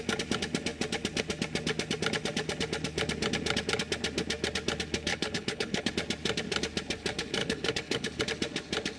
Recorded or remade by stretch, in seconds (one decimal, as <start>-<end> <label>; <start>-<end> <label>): 0.0-5.1 recorded; 5.1-5.9 remade; 5.9-7.4 recorded; 7.4-8.2 remade; 8.2-9.0 recorded